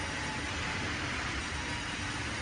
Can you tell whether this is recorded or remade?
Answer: recorded